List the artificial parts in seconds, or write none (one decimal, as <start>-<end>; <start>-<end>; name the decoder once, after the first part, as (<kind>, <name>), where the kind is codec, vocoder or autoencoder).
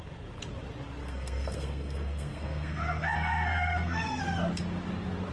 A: 1.0-4.2 (codec, SNAC)